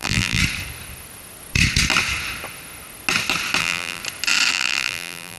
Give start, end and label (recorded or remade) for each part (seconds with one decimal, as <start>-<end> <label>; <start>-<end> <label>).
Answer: 0.0-0.4 remade; 0.4-3.6 recorded; 3.6-4.0 remade; 4.0-4.5 recorded; 4.5-5.4 remade